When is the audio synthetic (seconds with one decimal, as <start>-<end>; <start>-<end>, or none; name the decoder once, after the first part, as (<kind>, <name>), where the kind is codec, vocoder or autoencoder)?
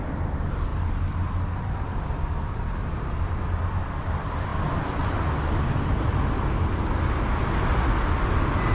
none